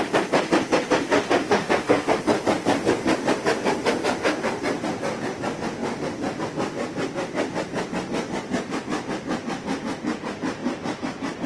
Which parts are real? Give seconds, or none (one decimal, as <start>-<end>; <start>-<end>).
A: 0.0-1.1; 2.2-11.5

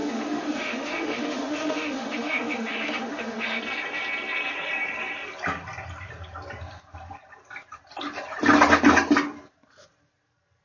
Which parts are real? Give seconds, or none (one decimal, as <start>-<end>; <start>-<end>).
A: 3.6-10.6

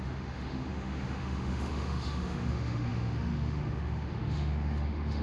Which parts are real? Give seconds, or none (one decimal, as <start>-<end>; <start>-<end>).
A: none